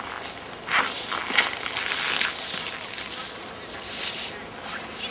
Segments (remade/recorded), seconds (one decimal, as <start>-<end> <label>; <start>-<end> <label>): 0.0-5.1 recorded